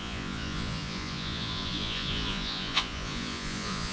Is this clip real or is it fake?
fake